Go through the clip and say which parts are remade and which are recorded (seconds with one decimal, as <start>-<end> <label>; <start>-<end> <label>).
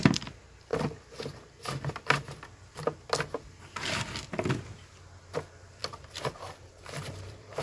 0.0-5.8 recorded; 5.8-7.6 remade